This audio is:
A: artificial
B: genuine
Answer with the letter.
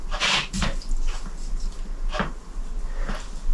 B